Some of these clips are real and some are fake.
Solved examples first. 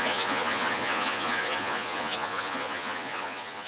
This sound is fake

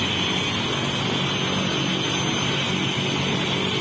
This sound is real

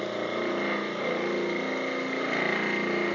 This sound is real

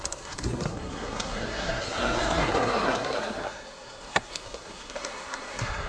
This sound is fake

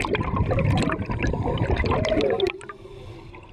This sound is real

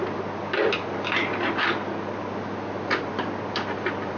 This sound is real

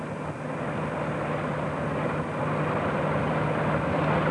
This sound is real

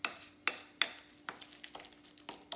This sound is real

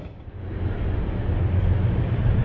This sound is real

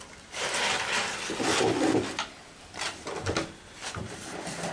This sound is fake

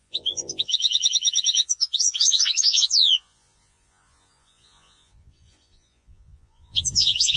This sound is fake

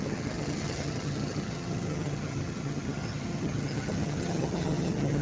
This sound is fake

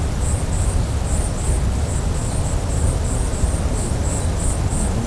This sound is real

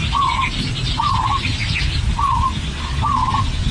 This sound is real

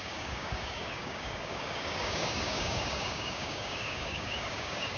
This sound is fake